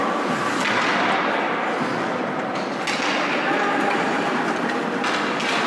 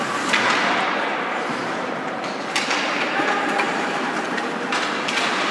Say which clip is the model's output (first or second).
second